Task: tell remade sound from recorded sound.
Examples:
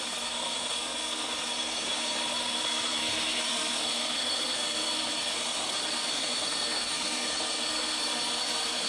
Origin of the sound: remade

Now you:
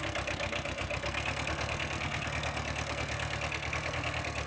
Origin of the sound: remade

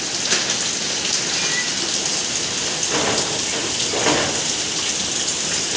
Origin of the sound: recorded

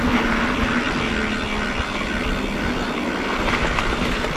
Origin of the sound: recorded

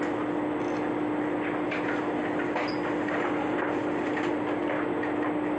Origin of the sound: recorded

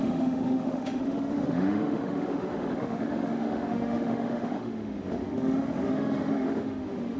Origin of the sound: remade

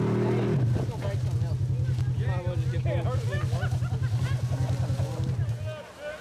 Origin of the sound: recorded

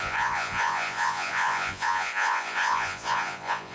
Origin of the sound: remade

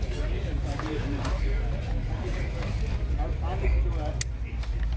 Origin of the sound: recorded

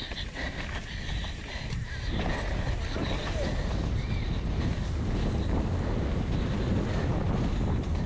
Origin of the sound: recorded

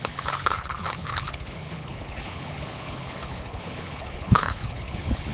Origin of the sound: remade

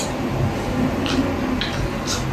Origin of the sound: recorded